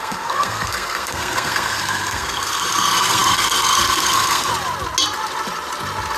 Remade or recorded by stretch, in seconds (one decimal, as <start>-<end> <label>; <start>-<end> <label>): 0.0-4.5 remade; 4.5-6.2 recorded